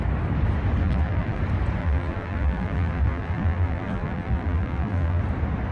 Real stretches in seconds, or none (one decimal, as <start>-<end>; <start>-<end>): 0.0-0.8; 1.4-1.8; 5.2-5.7